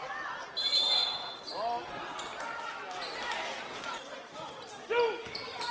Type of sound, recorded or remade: recorded